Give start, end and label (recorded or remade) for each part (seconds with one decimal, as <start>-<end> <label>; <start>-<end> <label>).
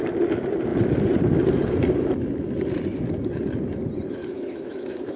0.0-4.2 recorded; 4.2-5.2 remade